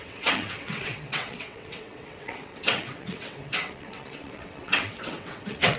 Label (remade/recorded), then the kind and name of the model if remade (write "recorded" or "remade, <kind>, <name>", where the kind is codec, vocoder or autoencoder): remade, vocoder, WaveNeXt